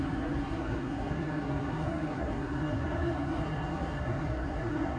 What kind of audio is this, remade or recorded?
remade